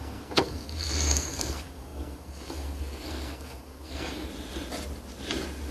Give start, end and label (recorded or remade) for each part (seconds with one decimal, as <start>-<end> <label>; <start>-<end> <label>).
0.0-4.3 remade; 4.3-5.7 recorded